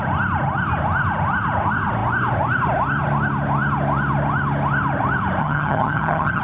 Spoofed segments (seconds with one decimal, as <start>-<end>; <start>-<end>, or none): 5.4-6.4